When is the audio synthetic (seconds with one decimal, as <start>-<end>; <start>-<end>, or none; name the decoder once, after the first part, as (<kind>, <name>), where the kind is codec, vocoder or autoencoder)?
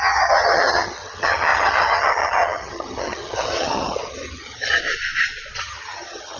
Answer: 0.0-4.8 (vocoder, HiFi-GAN); 5.6-6.4